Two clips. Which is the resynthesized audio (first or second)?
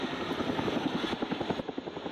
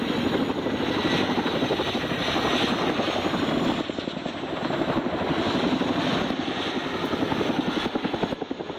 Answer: first